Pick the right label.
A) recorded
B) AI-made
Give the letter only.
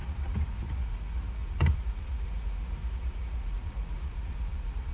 B